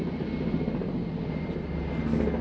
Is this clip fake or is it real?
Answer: real